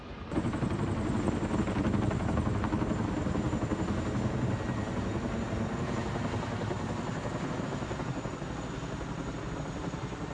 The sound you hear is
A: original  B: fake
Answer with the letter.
A